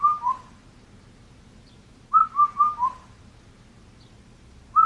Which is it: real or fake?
fake